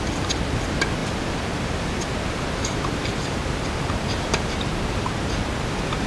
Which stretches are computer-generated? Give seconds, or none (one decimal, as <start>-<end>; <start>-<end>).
1.0-4.7